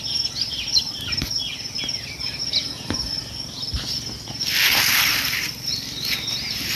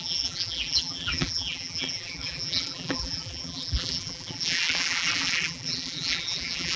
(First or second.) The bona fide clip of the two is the first